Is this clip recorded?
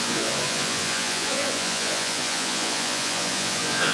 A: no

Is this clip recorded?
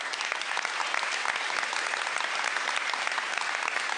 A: yes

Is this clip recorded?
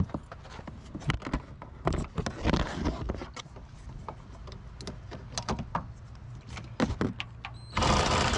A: yes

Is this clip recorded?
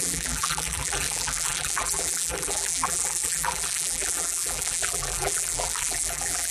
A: no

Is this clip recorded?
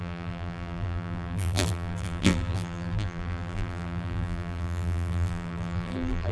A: no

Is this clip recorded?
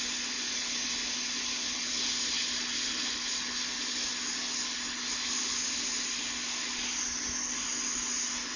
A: yes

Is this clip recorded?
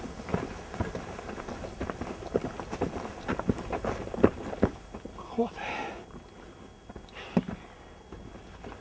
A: yes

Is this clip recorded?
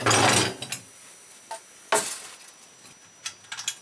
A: yes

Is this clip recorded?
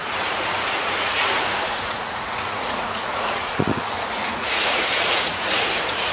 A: no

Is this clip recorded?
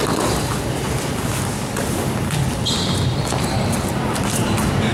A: yes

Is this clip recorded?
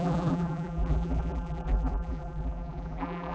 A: no